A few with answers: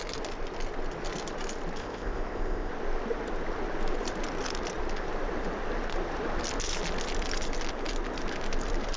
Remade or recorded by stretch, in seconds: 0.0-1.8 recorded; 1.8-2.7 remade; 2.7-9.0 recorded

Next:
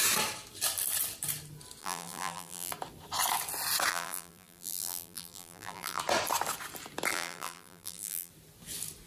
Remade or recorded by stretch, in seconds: 0.0-1.8 recorded; 1.8-2.7 remade; 2.7-3.9 recorded; 3.9-6.0 remade; 6.0-7.1 recorded; 7.1-8.3 remade; 8.3-9.1 recorded

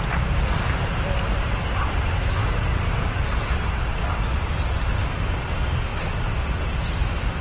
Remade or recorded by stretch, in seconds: 0.0-2.4 recorded; 2.4-4.8 remade; 4.8-7.4 recorded

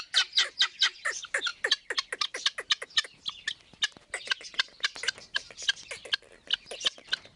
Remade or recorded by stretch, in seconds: 0.0-7.4 recorded

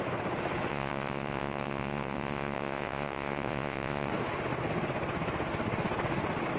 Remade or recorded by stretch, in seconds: 0.0-0.7 recorded; 0.7-4.1 remade; 4.1-6.6 recorded